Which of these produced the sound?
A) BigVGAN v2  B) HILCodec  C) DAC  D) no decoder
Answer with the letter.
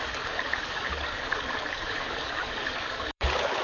C